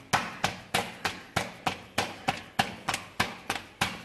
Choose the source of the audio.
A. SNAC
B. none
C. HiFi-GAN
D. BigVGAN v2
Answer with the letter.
B